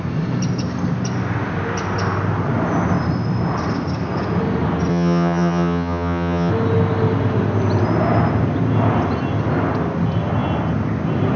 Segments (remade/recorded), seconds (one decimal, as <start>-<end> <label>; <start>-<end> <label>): 0.0-4.9 recorded; 4.9-6.5 remade; 6.5-11.4 recorded